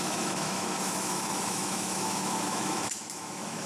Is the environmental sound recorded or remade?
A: remade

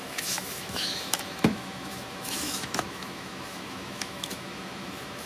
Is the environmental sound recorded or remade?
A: remade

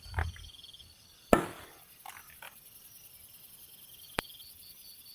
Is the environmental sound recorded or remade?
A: recorded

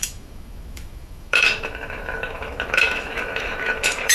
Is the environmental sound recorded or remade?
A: remade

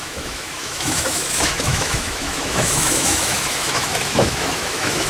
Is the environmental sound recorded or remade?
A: remade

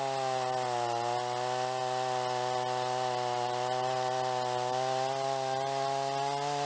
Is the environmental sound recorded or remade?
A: recorded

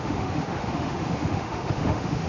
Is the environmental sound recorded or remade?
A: remade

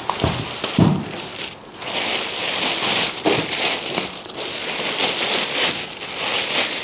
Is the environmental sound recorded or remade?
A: recorded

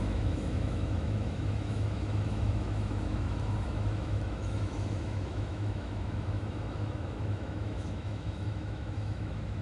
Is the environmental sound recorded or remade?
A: remade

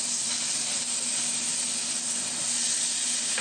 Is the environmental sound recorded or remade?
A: recorded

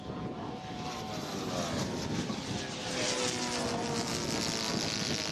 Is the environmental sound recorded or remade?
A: recorded